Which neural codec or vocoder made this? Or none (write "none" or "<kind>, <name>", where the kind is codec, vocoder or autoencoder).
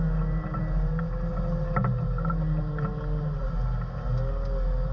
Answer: none